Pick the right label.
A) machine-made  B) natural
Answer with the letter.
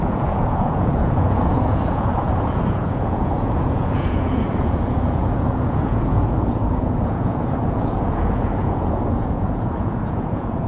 A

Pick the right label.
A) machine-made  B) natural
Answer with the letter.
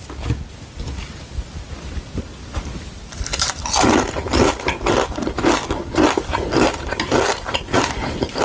B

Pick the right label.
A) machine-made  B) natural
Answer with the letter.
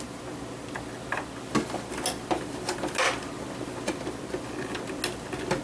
B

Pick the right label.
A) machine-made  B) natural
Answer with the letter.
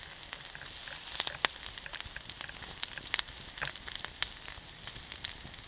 B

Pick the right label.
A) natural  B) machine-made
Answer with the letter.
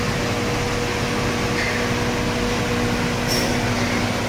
A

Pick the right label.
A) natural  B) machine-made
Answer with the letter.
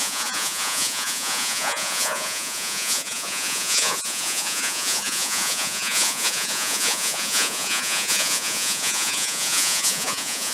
B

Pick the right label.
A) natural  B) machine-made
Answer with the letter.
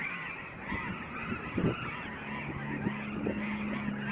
A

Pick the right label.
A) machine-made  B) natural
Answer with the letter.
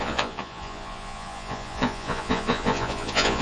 A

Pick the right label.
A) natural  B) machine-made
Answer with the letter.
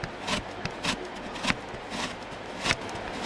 A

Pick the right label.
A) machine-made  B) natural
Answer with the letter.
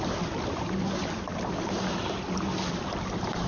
B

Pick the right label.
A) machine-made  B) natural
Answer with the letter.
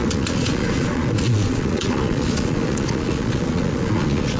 A